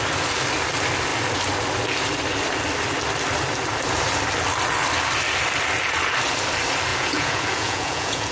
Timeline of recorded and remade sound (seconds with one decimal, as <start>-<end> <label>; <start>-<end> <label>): 0.0-6.9 recorded; 6.9-8.3 remade